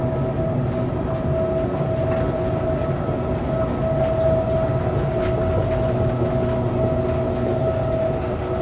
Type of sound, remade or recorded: recorded